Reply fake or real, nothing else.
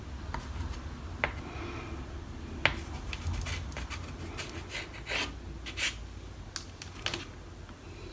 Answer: real